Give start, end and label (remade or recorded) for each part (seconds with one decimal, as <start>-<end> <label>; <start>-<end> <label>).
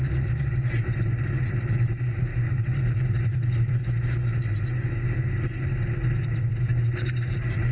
0.0-3.8 remade; 3.8-5.6 recorded; 5.6-7.7 remade